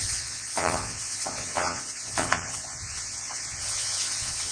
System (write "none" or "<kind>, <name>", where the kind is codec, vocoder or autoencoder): vocoder, Vocos